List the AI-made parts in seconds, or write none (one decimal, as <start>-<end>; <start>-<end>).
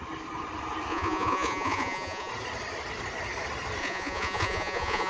0.9-2.3; 3.8-5.1